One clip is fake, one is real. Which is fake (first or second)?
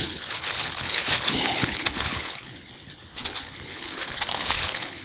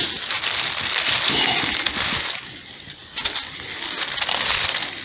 first